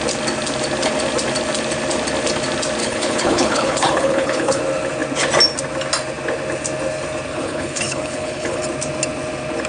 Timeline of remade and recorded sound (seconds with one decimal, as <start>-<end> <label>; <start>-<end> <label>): 0.0-2.8 recorded; 2.8-4.6 remade; 4.6-7.3 recorded; 7.3-8.6 remade; 8.6-9.7 recorded